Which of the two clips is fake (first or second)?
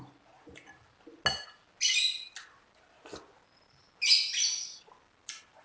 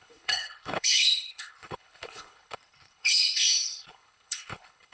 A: second